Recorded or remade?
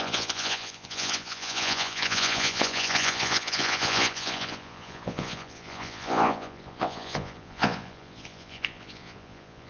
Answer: remade